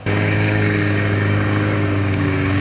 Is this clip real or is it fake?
fake